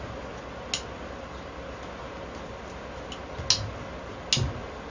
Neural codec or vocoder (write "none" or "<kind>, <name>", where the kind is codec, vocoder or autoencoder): none